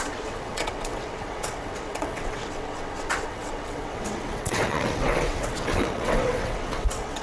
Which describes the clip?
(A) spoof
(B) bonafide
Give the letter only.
A